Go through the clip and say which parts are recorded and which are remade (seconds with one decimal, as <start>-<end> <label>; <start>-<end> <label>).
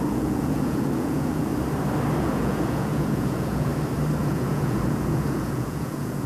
0.0-1.5 remade; 1.5-2.2 recorded; 2.2-3.7 remade; 3.7-4.2 recorded; 4.2-6.3 remade